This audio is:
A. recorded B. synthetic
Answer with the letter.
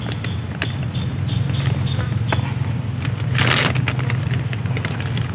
A